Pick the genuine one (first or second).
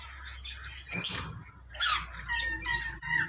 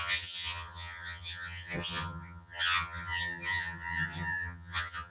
first